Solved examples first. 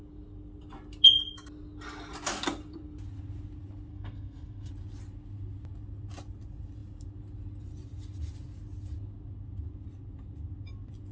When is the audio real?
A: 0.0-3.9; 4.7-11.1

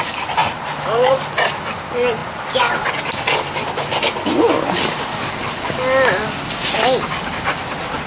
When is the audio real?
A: 0.0-0.4; 1.1-8.1

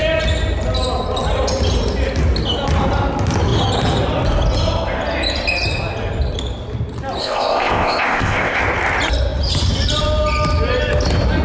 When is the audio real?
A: 0.0-7.2; 8.6-11.4